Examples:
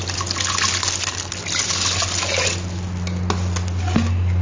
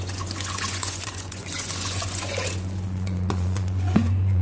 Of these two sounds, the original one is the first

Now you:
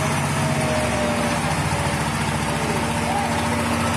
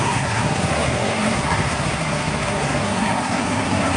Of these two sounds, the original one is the first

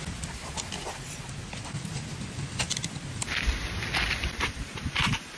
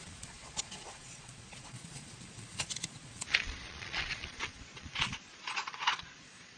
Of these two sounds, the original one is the first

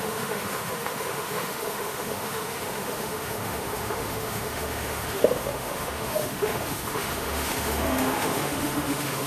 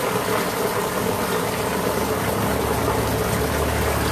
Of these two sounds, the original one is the second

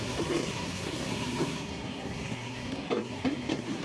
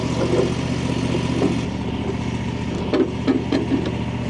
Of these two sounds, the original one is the second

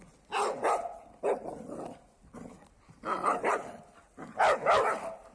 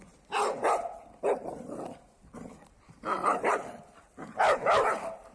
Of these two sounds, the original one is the first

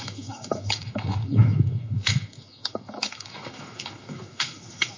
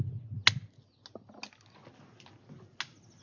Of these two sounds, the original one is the second